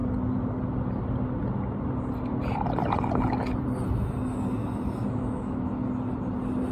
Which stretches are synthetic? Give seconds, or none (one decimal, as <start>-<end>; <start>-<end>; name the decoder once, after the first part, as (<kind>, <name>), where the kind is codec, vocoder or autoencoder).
4.6-5.7 (autoencoder, DAC-VAE)